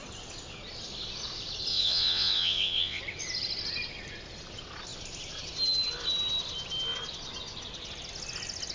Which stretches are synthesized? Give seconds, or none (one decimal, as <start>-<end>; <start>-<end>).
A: 1.7-3.0